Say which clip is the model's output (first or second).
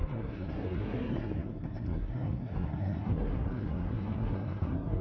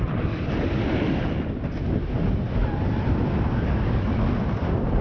first